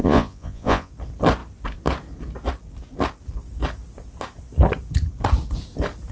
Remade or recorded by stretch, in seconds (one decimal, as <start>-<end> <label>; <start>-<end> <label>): 0.0-0.9 remade; 0.9-6.1 recorded